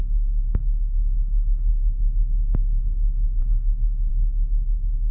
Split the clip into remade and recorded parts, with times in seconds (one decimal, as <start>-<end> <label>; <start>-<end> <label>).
0.0-1.7 remade; 1.7-3.4 recorded; 3.4-4.1 remade; 4.1-5.1 recorded